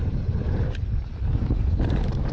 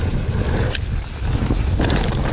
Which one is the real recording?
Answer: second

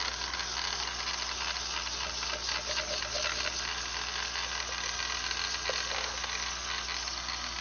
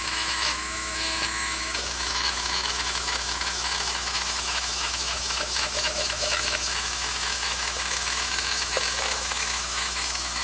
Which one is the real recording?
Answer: first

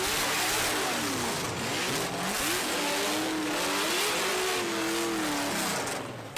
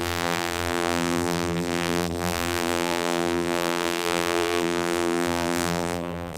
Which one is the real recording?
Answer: first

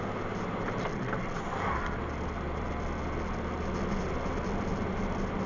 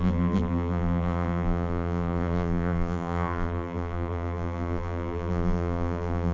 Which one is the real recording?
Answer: first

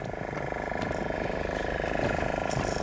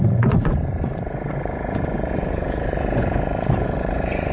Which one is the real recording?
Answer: first